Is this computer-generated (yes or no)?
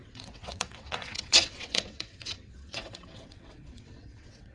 yes